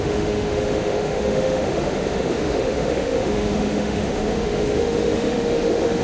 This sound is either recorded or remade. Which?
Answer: remade